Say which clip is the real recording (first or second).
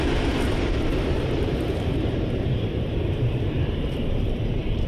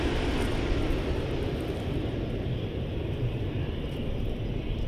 second